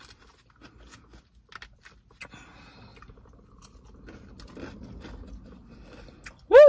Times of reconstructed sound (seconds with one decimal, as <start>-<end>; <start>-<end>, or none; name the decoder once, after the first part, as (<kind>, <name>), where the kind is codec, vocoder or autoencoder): none